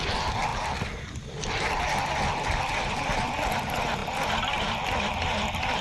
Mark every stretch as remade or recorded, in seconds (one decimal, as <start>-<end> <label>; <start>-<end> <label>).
0.0-5.8 recorded